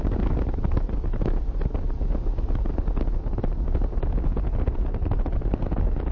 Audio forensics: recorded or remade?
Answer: recorded